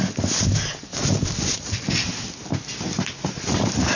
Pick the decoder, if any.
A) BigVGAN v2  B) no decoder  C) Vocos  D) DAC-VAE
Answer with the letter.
B